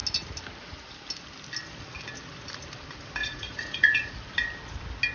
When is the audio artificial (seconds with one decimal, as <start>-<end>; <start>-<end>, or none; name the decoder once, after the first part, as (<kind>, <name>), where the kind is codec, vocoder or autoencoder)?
3.2-4.1 (vocoder, Vocos)